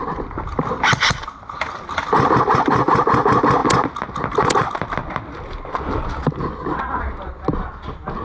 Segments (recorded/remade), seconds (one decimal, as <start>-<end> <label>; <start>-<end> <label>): 0.0-8.2 recorded